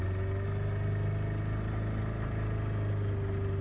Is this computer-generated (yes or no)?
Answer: no